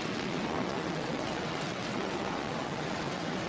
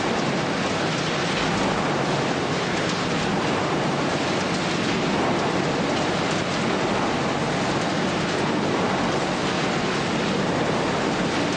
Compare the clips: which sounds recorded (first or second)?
second